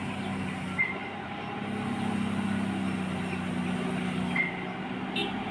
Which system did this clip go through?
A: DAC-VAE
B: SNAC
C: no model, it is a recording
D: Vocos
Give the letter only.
C